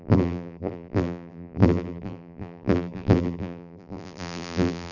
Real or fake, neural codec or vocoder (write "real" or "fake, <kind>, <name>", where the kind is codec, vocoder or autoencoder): fake, vocoder, BigVGAN v2